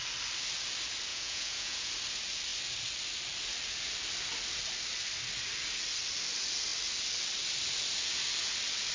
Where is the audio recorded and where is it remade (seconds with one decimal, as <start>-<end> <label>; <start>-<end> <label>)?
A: 0.0-1.1 recorded; 1.1-1.9 remade; 1.9-8.9 recorded